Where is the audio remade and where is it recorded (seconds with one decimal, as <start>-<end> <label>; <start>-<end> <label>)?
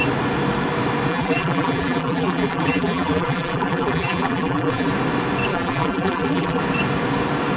0.0-1.1 recorded; 1.1-4.9 remade; 4.9-5.5 recorded; 5.5-6.6 remade; 6.6-7.6 recorded